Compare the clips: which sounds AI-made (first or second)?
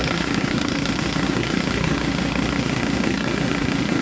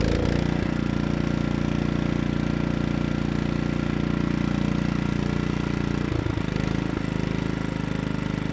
first